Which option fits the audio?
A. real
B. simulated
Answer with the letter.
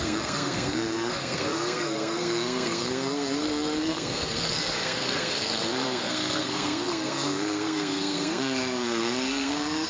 B